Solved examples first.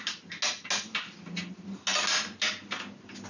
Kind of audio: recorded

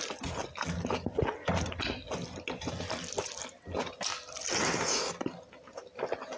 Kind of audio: recorded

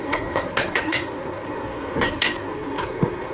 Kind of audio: remade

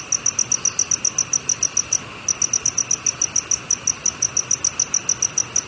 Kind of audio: recorded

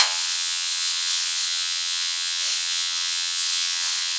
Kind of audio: remade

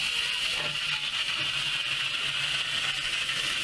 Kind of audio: recorded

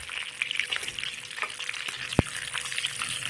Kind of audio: recorded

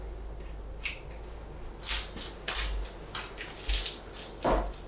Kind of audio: recorded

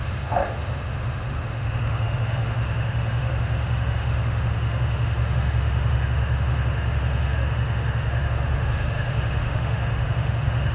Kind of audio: remade